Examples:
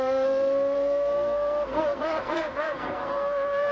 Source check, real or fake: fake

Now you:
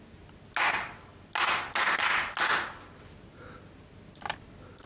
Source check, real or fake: real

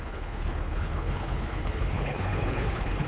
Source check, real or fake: fake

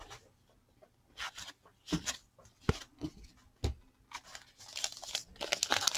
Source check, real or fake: real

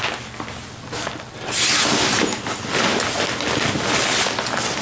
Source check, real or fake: real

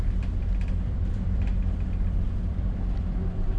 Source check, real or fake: fake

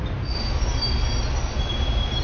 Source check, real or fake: real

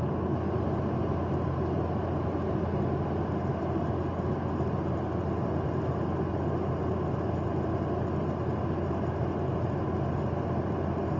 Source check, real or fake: real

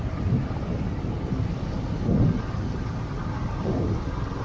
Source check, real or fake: real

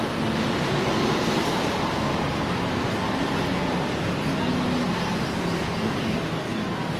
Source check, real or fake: real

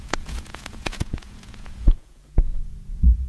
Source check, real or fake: fake